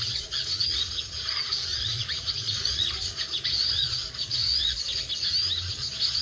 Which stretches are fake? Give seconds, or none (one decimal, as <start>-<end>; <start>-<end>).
0.0-5.1; 5.7-6.2